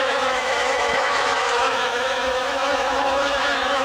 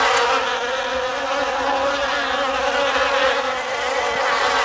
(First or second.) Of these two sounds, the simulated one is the first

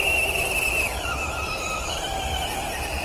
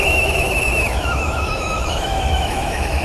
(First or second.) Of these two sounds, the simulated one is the second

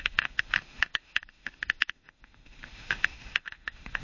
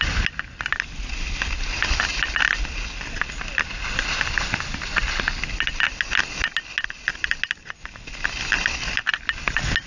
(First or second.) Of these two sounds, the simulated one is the first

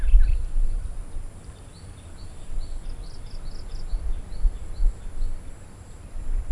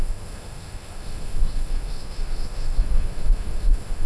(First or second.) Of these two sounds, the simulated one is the second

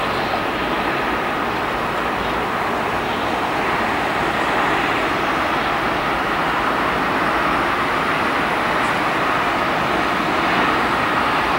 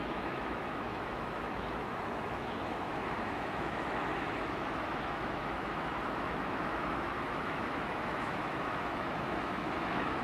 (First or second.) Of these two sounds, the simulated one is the second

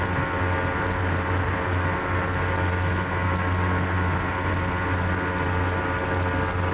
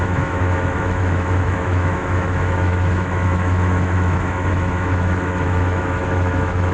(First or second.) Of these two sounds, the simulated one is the second